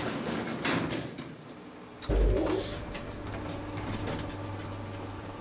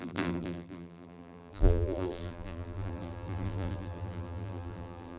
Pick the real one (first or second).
first